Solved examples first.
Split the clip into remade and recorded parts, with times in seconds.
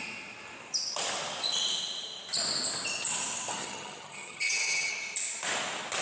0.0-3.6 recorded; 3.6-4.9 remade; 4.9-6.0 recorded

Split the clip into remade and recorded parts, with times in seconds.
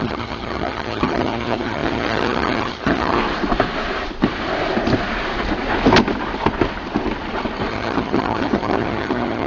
0.0-3.2 remade; 3.2-7.7 recorded; 7.7-9.5 remade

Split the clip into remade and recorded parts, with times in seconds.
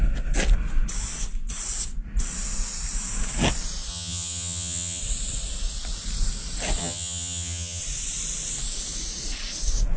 0.0-3.9 recorded; 3.9-5.0 remade; 5.0-6.8 recorded; 6.8-7.8 remade; 7.8-10.0 recorded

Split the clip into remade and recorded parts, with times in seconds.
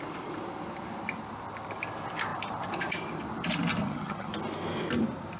0.0-3.8 recorded; 3.8-4.3 remade; 4.3-5.4 recorded